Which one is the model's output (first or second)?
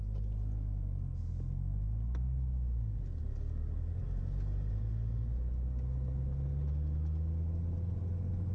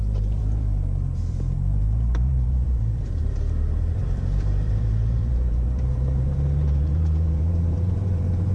second